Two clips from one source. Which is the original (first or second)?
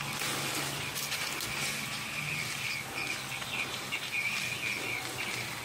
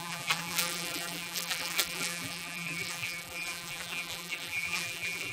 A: first